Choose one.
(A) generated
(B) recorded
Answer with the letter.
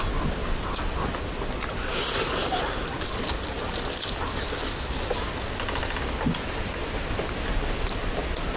B